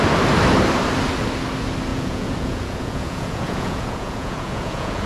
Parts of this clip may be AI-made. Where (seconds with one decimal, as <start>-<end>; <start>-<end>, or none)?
1.9-5.1